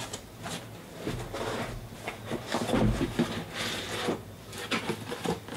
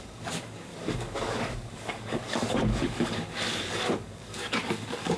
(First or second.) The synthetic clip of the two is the second